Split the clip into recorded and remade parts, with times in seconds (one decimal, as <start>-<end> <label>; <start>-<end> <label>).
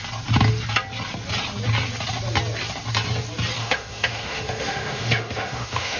0.0-3.6 recorded; 3.6-6.0 remade